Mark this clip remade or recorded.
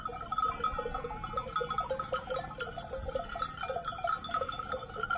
recorded